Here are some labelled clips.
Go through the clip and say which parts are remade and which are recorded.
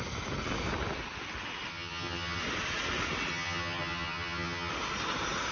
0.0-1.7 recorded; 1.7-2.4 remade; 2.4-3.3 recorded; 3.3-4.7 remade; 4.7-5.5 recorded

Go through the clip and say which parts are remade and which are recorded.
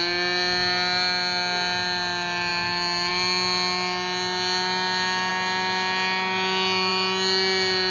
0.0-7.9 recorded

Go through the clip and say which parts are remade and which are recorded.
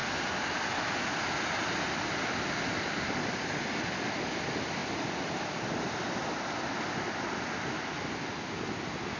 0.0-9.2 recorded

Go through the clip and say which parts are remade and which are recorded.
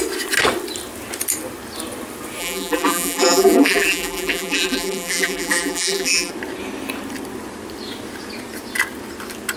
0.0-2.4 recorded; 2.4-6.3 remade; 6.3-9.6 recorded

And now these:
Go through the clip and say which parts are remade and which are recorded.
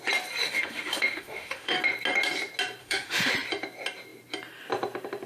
0.0-0.4 recorded; 0.4-1.8 remade; 1.8-2.8 recorded; 2.8-3.3 remade; 3.3-5.3 recorded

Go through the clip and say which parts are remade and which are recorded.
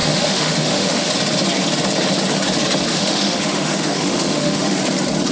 0.0-1.1 remade; 1.1-2.9 recorded; 2.9-4.8 remade; 4.8-5.3 recorded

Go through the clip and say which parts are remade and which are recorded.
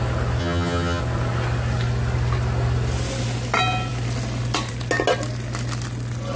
0.0-0.4 recorded; 0.4-1.0 remade; 1.0-6.4 recorded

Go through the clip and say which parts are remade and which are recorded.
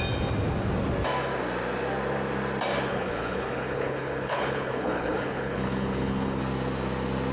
0.0-2.9 recorded; 2.9-6.4 remade; 6.4-7.3 recorded